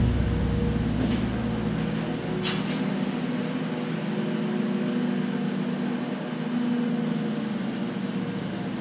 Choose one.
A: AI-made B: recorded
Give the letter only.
B